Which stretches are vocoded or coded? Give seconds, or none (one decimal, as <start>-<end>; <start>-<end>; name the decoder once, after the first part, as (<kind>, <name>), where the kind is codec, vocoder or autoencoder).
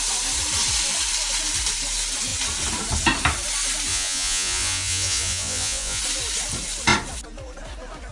3.9-6.0 (vocoder, Vocos)